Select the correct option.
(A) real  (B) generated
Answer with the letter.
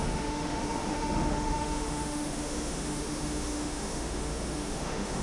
B